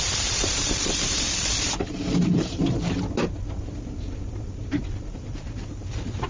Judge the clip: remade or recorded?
remade